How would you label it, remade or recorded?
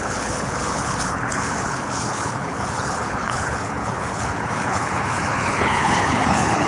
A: remade